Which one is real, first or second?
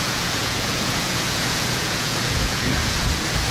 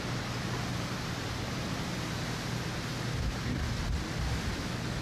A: second